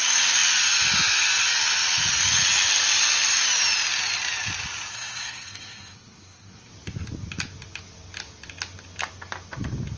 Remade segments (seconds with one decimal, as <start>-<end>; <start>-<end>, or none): 4.9-6.7